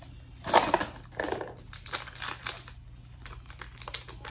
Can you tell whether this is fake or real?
real